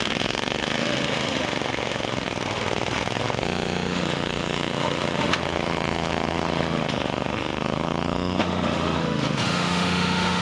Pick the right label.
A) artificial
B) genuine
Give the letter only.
A